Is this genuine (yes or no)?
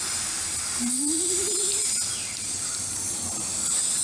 no